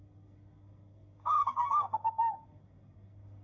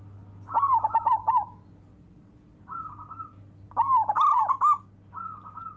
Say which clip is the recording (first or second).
second